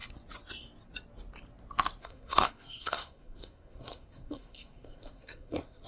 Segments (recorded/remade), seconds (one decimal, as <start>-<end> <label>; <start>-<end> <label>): 0.0-2.0 recorded; 2.0-5.9 remade